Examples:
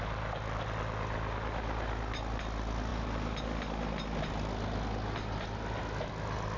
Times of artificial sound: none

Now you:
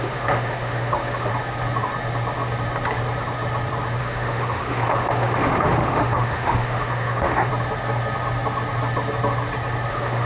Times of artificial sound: 0.0-1.3; 4.0-7.5; 9.9-10.3

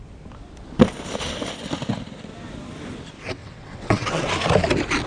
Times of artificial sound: 3.4-4.3

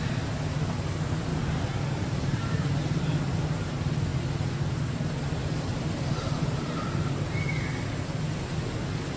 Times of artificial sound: 1.3-3.0; 5.4-7.3

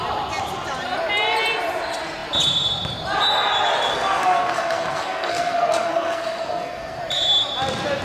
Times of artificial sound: 3.9-7.0

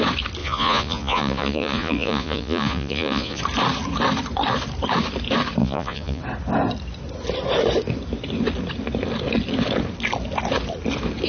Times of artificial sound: 0.4-3.4; 5.6-6.2

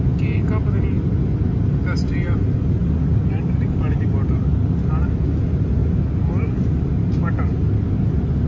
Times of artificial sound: none

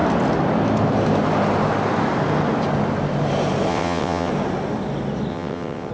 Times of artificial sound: 3.7-4.3; 5.3-5.9